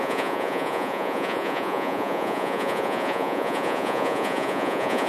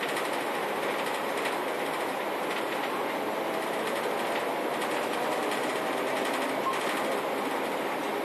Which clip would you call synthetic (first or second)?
first